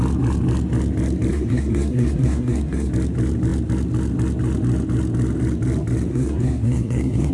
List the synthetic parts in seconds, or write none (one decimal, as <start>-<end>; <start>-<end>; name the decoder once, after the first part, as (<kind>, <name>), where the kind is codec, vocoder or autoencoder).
1.3-2.9 (codec, SNAC); 6.1-7.3